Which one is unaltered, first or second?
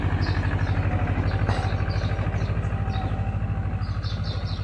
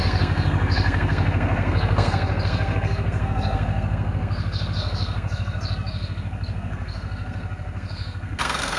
first